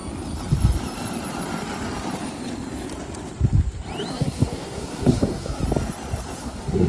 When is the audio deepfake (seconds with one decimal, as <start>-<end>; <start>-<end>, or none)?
4.1-5.6; 6.4-6.9